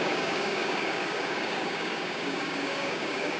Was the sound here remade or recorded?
remade